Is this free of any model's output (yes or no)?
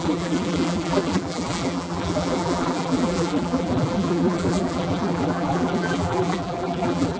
no